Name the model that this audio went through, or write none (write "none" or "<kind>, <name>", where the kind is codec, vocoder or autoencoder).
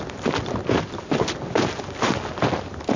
none